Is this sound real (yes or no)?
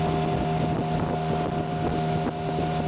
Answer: yes